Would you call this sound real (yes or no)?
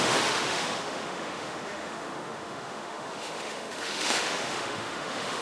no